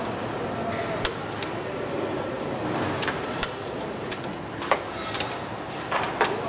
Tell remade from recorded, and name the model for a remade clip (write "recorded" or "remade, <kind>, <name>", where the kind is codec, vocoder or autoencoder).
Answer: recorded